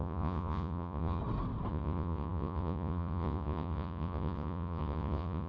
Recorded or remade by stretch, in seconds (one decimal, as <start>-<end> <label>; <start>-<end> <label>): 0.0-1.2 remade; 1.2-1.7 recorded; 1.7-5.5 remade